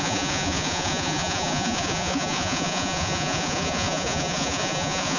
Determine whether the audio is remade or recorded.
remade